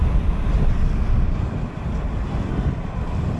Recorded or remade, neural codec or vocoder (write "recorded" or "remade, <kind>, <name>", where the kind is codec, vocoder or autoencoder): remade, vocoder, BigVGAN v2